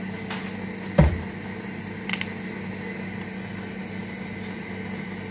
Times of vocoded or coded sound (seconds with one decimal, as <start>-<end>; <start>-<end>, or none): none